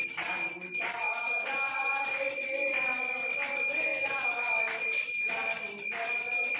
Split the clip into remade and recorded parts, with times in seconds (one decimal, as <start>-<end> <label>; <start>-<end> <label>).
0.0-6.6 recorded